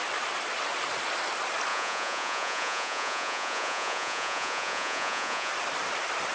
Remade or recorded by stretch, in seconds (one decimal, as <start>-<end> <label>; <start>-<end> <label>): 0.0-1.7 recorded; 1.7-5.5 remade; 5.5-6.3 recorded